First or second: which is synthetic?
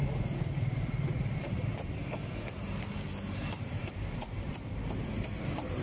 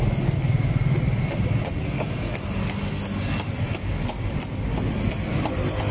first